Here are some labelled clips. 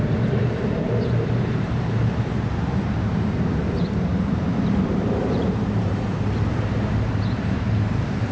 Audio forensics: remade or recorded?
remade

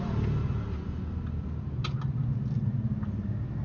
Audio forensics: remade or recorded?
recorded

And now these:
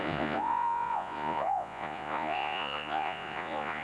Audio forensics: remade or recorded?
remade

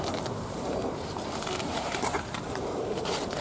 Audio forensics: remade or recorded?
remade